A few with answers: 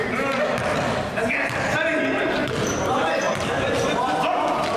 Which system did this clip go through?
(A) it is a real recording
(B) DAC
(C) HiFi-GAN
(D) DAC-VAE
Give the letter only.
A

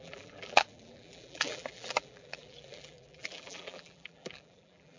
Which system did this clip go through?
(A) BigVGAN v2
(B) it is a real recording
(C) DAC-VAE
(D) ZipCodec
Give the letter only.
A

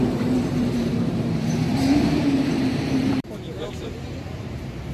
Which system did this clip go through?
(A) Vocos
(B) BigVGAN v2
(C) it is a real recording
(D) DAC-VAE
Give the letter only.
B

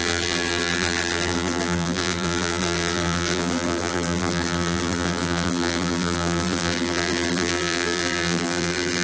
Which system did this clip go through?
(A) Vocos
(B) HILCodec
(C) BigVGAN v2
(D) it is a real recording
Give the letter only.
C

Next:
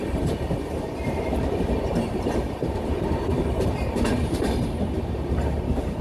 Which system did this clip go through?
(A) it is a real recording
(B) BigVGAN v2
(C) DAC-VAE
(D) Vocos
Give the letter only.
B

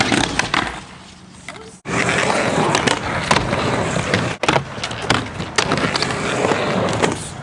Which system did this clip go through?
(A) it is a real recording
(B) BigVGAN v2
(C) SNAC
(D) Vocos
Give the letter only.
A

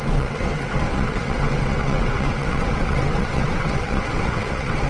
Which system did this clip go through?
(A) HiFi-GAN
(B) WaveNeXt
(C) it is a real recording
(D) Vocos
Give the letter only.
B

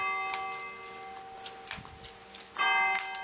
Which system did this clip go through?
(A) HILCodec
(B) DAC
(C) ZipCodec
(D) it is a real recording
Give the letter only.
D